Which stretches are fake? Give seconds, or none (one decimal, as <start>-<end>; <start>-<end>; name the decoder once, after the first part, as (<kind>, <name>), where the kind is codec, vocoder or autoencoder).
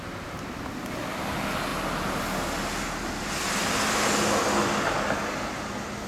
none